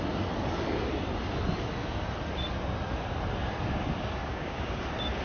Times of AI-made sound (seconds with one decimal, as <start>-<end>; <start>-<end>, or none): 4.2-4.8